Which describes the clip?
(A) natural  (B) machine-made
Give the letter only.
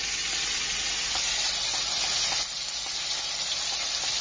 A